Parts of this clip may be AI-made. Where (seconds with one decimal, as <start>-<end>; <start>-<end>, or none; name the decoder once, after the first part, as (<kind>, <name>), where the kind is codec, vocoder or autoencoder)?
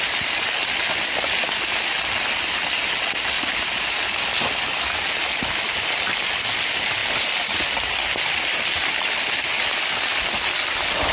none